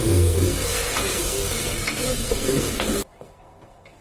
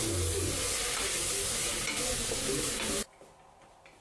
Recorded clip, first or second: second